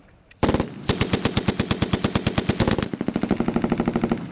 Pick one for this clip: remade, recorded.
recorded